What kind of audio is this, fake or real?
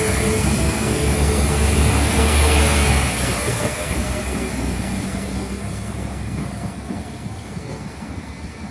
fake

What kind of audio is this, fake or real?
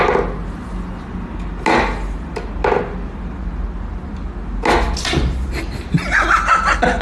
real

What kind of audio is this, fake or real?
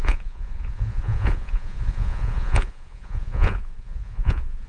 fake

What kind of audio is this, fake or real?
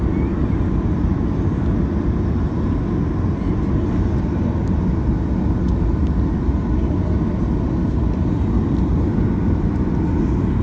real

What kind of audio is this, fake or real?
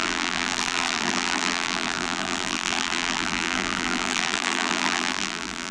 fake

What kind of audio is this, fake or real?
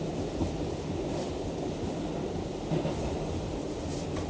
real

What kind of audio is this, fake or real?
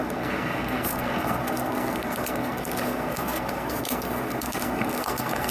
fake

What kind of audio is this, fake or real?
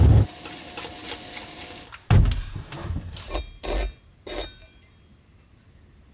real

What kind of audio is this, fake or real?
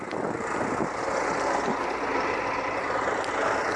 real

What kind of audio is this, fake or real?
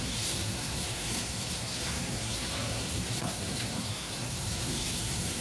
fake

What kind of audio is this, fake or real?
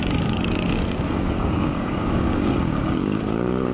fake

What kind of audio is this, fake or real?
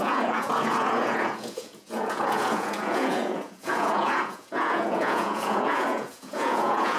fake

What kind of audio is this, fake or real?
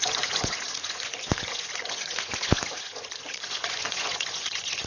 fake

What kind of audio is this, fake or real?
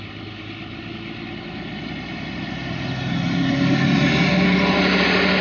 real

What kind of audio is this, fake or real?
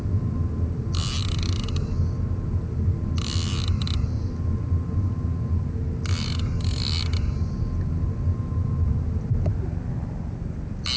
real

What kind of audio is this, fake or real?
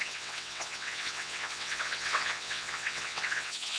fake